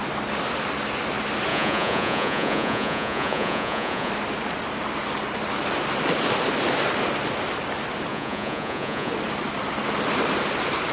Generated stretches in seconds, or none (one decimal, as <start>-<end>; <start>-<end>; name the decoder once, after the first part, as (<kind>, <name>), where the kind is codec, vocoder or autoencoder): 1.5-4.1 (vocoder, Vocos); 8.1-9.1